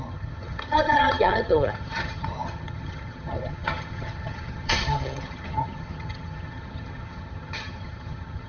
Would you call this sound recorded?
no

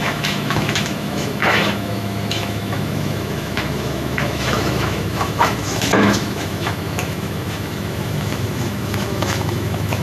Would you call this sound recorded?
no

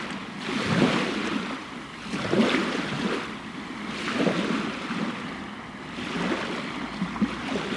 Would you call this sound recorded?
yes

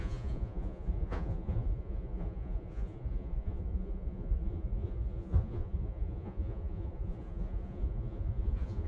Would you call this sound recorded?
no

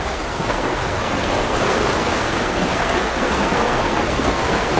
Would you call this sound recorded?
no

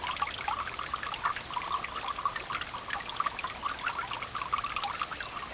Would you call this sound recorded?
yes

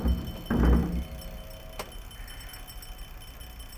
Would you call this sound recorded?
yes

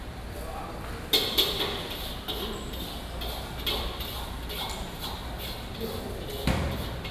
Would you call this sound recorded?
yes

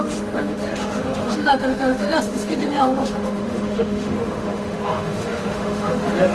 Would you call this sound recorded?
no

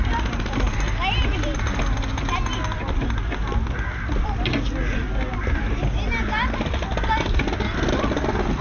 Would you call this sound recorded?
yes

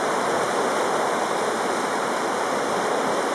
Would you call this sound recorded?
no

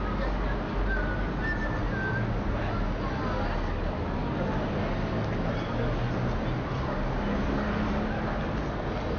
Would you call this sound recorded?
yes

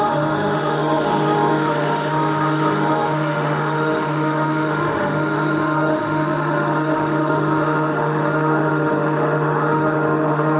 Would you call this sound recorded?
no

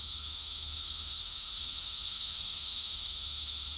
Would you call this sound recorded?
no